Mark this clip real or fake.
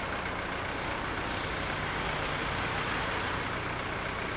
real